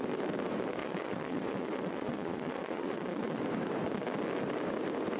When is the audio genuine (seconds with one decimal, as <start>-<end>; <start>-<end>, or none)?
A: 0.0-0.8; 3.4-5.2